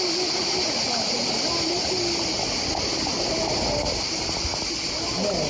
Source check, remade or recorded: recorded